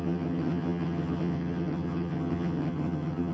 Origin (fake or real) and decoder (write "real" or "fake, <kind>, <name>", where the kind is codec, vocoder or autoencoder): fake, vocoder, HiFi-GAN